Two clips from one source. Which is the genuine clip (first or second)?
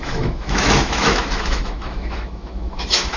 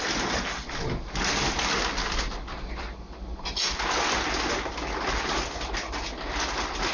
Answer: second